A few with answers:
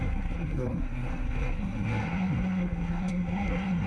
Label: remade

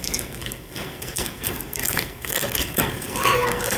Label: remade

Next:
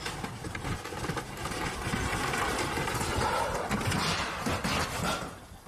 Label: recorded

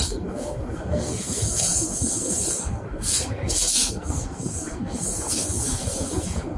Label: remade